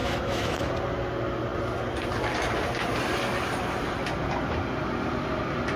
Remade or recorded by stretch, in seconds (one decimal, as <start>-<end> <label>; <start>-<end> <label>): 0.0-0.7 remade; 0.7-5.8 recorded